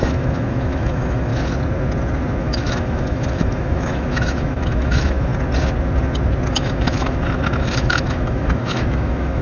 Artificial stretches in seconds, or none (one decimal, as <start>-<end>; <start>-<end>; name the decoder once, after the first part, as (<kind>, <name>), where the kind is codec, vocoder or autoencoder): 0.0-1.3 (autoencoder, DAC-VAE); 2.4-5.3; 6.5-9.4